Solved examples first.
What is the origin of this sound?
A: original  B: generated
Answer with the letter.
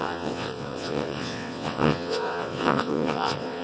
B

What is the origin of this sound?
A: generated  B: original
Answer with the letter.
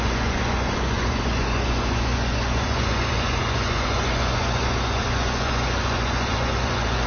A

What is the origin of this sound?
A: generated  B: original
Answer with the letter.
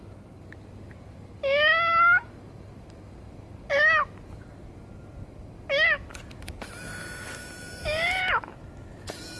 B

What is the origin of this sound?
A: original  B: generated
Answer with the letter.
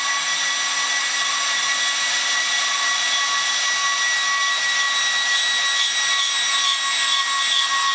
A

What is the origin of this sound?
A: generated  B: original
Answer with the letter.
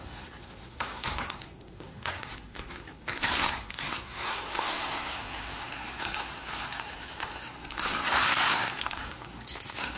A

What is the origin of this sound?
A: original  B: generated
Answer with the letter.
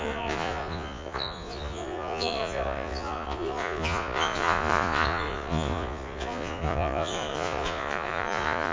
B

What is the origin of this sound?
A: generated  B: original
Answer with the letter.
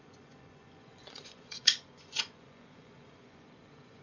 A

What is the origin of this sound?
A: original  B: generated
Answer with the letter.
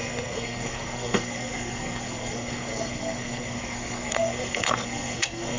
B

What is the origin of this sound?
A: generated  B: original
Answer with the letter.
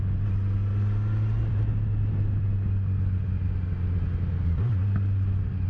B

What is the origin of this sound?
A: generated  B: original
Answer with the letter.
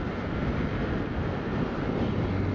B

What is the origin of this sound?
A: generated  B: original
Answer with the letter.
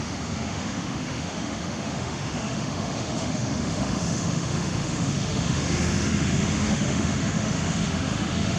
A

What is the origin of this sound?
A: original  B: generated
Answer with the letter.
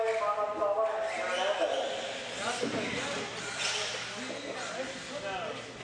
A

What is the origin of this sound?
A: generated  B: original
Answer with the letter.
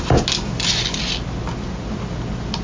B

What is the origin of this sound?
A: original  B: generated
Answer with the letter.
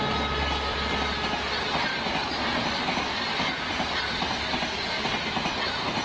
A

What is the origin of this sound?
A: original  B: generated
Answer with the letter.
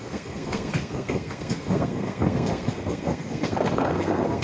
B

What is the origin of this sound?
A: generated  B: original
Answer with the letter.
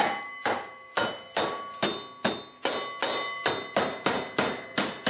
B